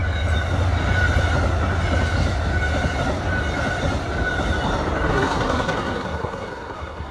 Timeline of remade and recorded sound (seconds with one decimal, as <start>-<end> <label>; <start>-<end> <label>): 0.0-5.1 recorded; 5.1-7.1 remade